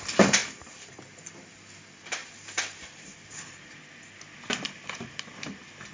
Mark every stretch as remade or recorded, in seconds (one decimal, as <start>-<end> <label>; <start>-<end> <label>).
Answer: 0.0-0.4 recorded; 0.4-1.0 remade; 1.0-2.2 recorded; 2.2-3.8 remade; 3.8-5.9 recorded